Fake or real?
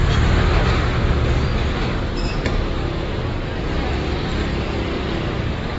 real